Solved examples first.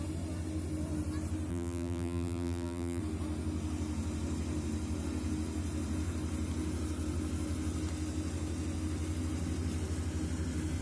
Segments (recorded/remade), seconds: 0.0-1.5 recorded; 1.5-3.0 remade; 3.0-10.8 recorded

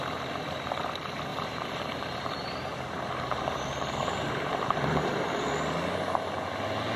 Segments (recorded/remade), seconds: 0.0-1.3 recorded; 1.3-5.5 remade; 5.5-7.0 recorded

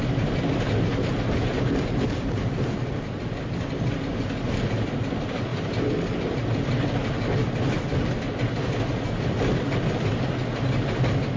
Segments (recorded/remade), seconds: 0.0-0.9 recorded; 0.9-3.2 remade; 3.2-11.4 recorded

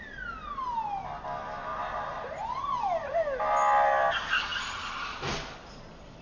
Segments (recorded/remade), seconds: 0.0-1.7 recorded; 1.7-2.8 remade; 2.8-6.2 recorded

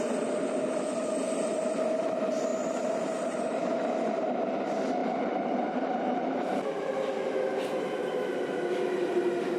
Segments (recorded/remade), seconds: 0.0-2.5 recorded; 2.5-3.6 remade; 3.6-5.0 recorded; 5.0-6.7 remade; 6.7-9.6 recorded